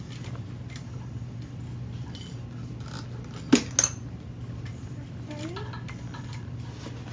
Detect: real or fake real